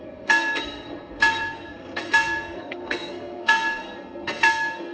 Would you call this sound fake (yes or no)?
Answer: yes